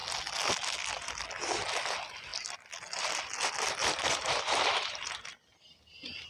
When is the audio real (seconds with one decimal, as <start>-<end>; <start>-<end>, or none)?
0.0-3.8; 5.3-6.3